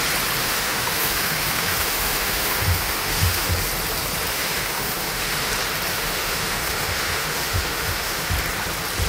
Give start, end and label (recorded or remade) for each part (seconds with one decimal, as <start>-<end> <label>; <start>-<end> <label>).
0.0-0.4 recorded; 0.4-3.5 remade; 3.5-4.3 recorded; 4.3-5.5 remade; 5.5-5.9 recorded; 5.9-8.3 remade; 8.3-9.1 recorded